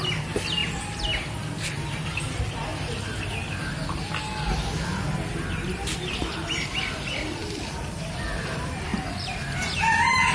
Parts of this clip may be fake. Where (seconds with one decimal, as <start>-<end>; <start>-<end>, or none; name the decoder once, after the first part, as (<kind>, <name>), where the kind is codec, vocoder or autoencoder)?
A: 0.0-0.6 (vocoder, BigVGAN v2); 1.7-2.7; 4.4-8.9